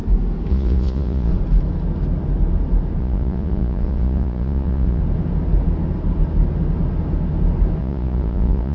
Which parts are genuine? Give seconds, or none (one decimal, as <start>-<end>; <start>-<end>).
0.0-0.5; 1.3-3.0; 5.0-7.8